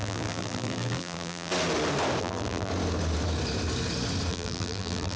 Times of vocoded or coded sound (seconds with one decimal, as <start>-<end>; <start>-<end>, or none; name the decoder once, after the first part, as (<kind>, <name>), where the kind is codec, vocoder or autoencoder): 0.0-1.5 (vocoder, BigVGAN v2); 2.2-2.7; 4.3-5.2